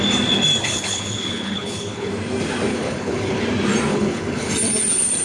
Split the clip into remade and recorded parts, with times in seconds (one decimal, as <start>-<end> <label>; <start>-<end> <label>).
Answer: 0.0-0.6 recorded; 0.6-2.1 remade; 2.1-2.7 recorded; 2.7-3.4 remade; 3.4-3.9 recorded; 3.9-4.5 remade; 4.5-5.2 recorded